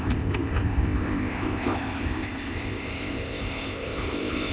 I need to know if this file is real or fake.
fake